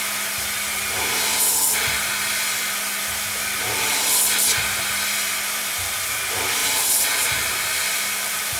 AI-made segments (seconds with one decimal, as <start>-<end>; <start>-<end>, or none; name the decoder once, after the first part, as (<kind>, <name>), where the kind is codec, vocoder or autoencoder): 6.6-8.6 (vocoder, BigVGAN v2)